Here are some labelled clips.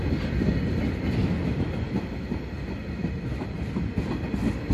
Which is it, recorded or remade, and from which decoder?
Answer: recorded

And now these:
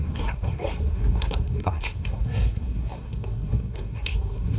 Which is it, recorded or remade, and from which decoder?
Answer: remade, codec, SNAC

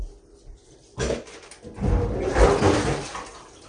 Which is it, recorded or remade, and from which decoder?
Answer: recorded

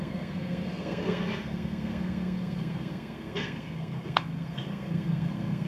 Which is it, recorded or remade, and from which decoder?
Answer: remade, codec, SNAC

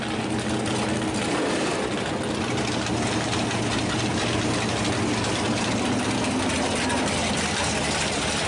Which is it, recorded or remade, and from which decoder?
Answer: recorded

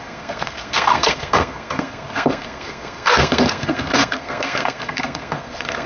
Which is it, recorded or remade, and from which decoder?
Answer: remade, codec, SNAC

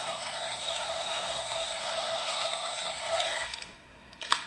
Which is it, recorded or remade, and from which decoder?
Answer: remade, codec, SNAC